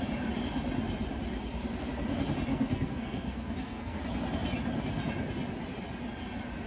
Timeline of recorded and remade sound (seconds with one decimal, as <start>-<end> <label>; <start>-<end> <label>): 0.0-2.5 recorded; 2.5-4.0 remade; 4.0-6.7 recorded